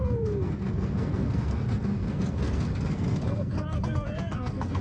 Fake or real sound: fake